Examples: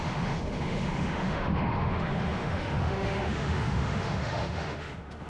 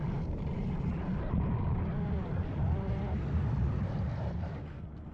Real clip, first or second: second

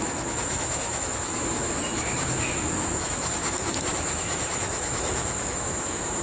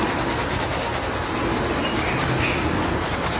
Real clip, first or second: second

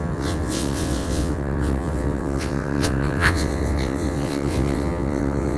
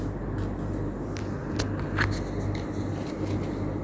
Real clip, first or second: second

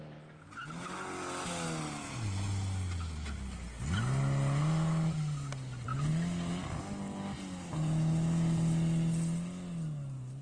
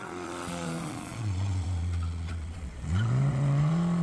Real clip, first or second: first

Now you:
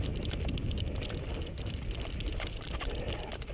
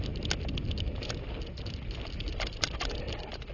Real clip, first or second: second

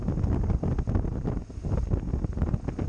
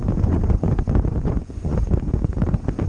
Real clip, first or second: first